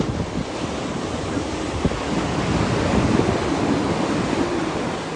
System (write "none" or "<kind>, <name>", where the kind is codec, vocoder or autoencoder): none